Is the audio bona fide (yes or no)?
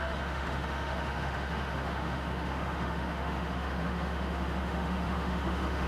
no